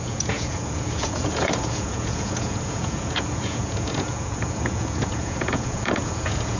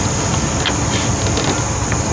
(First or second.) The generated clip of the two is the first